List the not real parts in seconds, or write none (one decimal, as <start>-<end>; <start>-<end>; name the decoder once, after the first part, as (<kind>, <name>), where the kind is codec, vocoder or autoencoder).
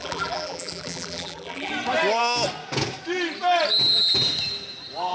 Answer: 0.0-1.7 (vocoder, BigVGAN v2)